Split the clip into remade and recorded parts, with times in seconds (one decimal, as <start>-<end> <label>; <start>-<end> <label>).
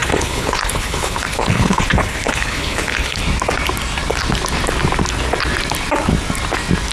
0.0-3.2 remade; 3.2-6.9 recorded